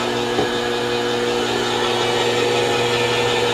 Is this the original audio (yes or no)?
yes